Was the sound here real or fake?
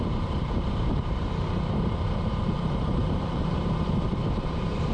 fake